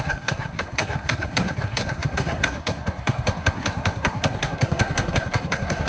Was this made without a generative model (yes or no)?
no